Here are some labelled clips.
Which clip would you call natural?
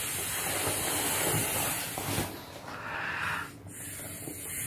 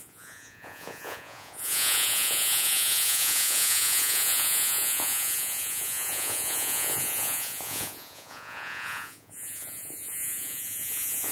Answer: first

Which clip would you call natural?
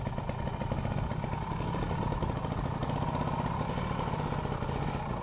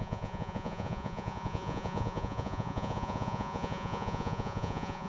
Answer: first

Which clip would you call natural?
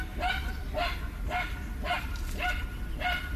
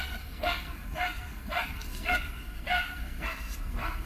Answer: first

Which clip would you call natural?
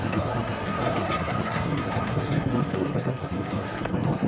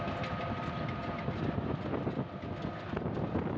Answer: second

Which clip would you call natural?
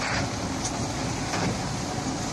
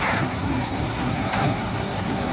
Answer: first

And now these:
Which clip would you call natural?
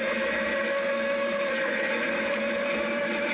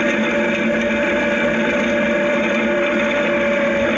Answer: second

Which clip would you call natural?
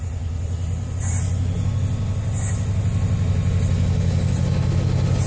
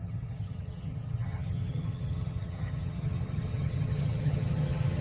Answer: first